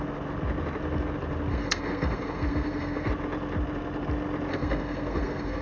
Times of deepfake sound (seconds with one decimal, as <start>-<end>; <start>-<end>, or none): 1.5-3.1; 4.5-5.6